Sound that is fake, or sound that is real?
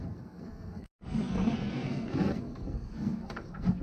fake